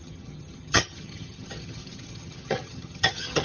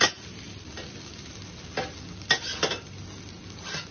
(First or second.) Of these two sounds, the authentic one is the second